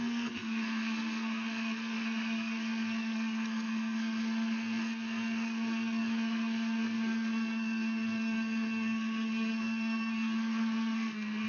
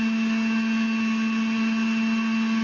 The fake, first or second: first